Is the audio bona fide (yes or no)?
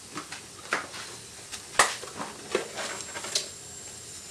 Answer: yes